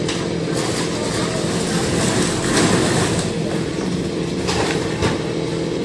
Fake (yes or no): no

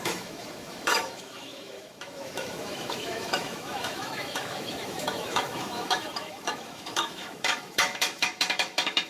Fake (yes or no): yes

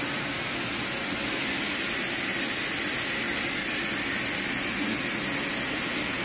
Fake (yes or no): no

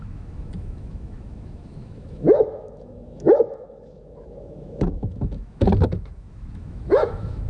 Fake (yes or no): yes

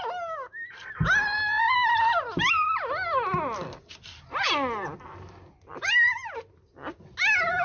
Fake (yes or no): no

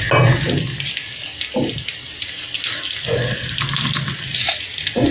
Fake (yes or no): no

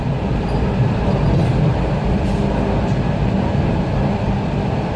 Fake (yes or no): no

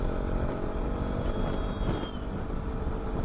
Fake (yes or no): no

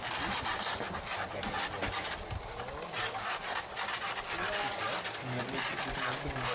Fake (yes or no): no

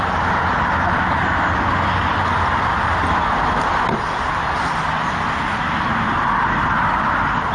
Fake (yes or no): no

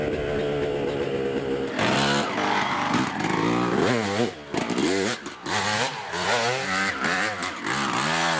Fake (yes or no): no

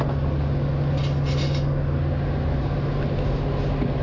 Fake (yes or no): no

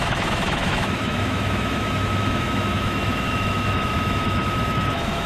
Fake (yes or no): yes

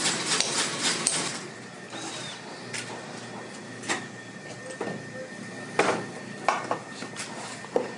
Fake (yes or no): no